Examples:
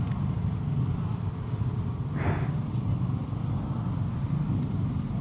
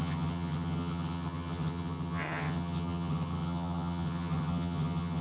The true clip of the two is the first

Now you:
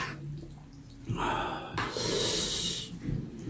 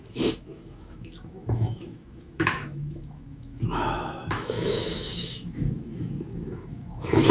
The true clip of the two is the first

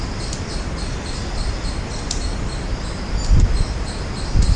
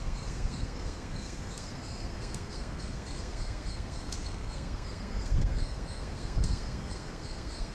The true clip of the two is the first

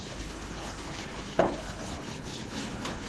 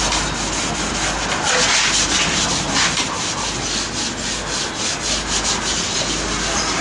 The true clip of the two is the second